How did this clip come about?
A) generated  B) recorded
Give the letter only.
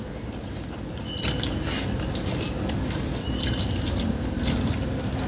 B